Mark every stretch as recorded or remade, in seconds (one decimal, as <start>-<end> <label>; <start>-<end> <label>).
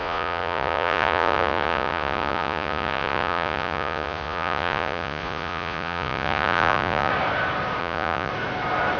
0.0-7.1 remade; 7.1-7.8 recorded; 7.8-8.3 remade; 8.3-9.0 recorded